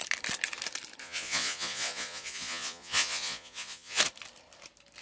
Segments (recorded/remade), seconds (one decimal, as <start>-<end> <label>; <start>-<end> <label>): 0.0-1.0 recorded; 1.0-4.0 remade; 4.0-5.0 recorded

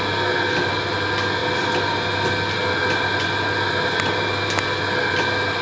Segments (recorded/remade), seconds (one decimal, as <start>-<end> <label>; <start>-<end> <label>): 0.0-5.6 recorded